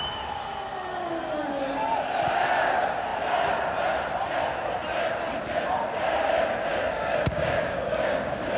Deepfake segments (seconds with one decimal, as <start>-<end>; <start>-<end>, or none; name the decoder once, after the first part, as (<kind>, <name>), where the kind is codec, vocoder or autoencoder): 6.7-8.1 (codec, DAC)